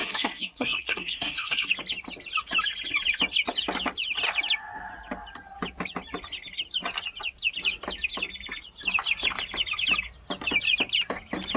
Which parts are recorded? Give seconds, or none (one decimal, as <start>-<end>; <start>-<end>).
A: 1.7-11.6